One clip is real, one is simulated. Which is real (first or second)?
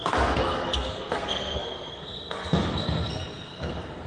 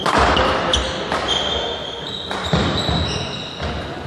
second